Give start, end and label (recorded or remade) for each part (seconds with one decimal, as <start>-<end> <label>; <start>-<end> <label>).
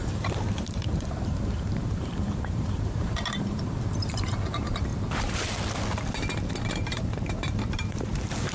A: 0.0-4.9 remade; 4.9-6.6 recorded; 6.6-8.5 remade